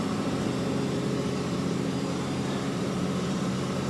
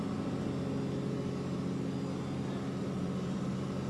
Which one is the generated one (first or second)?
first